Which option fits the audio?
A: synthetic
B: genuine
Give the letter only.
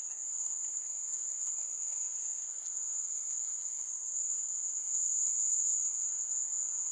A